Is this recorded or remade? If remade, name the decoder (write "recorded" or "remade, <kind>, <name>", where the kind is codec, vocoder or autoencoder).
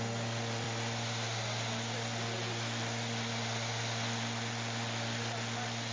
recorded